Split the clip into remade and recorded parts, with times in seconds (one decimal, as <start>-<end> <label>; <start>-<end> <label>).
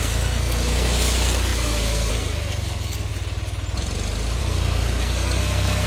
0.0-3.1 remade; 3.1-4.4 recorded; 4.4-5.9 remade